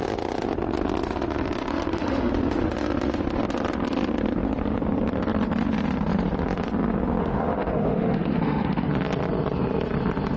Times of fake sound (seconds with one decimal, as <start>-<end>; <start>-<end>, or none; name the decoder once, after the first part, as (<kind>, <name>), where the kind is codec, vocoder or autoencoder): 1.7-2.3 (autoencoder, DAC-VAE); 7.2-8.9